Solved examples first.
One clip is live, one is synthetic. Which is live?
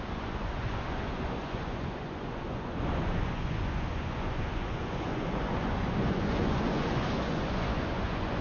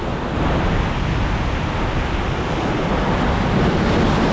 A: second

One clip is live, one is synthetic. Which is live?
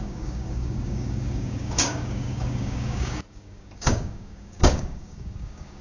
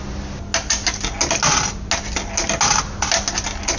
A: second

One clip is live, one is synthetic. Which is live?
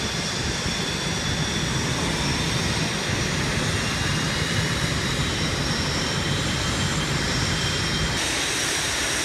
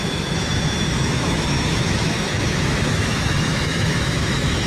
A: first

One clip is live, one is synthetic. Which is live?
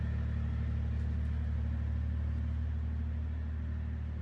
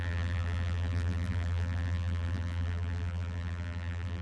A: first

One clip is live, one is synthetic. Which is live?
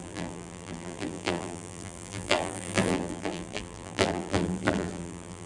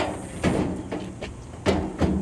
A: second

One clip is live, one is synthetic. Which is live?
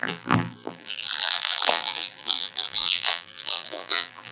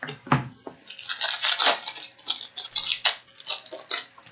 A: second